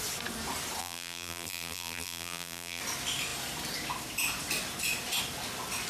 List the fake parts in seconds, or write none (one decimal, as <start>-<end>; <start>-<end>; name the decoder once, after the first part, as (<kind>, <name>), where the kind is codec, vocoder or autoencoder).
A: 0.8-2.8 (vocoder, BigVGAN v2)